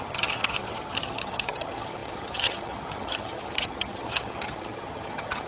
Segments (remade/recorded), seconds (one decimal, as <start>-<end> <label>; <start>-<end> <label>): 0.0-5.5 remade